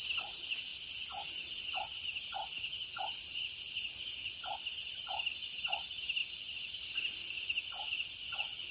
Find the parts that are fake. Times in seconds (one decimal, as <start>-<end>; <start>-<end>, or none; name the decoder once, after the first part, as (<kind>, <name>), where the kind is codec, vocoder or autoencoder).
none